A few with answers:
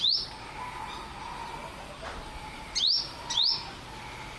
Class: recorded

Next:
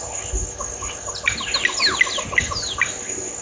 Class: recorded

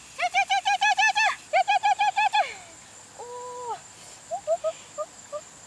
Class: recorded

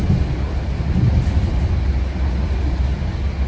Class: recorded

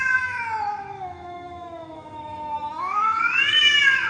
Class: remade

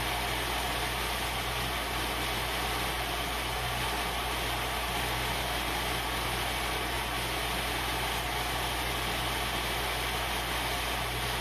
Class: recorded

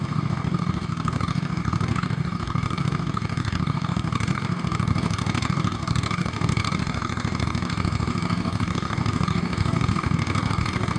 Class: remade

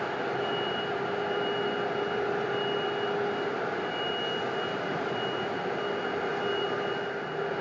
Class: recorded